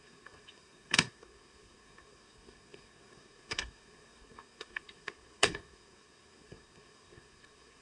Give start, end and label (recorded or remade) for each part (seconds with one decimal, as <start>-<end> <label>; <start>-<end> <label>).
0.0-7.8 remade

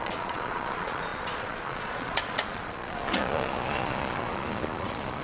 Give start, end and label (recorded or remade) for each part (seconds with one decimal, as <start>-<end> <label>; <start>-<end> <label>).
0.0-5.2 remade

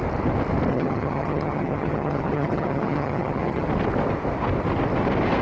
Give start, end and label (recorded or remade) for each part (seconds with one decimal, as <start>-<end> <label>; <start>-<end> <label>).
0.0-0.7 recorded; 0.7-3.7 remade; 3.7-5.4 recorded

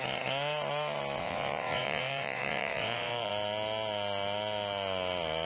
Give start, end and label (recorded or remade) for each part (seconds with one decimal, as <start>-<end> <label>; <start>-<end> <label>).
0.0-1.2 recorded; 1.2-3.3 remade; 3.3-5.5 recorded

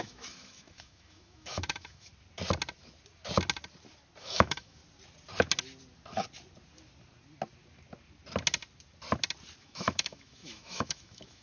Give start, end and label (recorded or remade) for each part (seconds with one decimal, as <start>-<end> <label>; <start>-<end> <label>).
0.0-2.1 remade; 2.1-4.2 recorded; 4.2-4.8 remade; 4.8-9.6 recorded; 9.6-11.4 remade

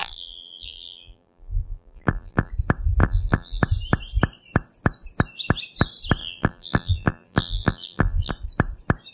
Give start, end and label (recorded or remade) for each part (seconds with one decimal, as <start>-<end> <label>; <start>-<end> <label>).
0.0-2.5 remade; 2.5-3.0 recorded; 3.0-3.6 remade; 3.6-6.2 recorded; 6.2-8.3 remade; 8.3-9.1 recorded

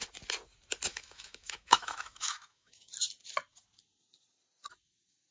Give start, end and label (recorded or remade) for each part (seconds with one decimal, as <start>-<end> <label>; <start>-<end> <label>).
0.0-0.9 recorded; 0.9-2.9 remade; 2.9-5.3 recorded